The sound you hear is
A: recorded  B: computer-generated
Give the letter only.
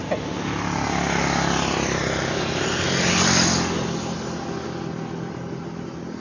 A